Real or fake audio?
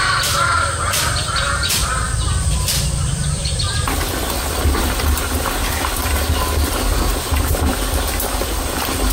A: fake